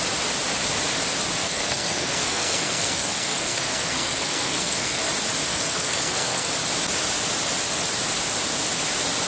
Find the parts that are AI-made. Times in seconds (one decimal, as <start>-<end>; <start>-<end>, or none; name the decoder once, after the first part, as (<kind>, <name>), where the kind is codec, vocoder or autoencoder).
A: 1.4-5.0 (codec, SNAC); 5.5-6.5